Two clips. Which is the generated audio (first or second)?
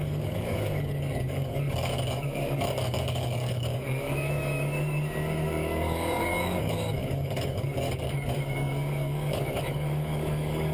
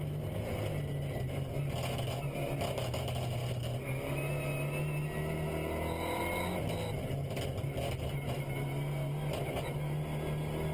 first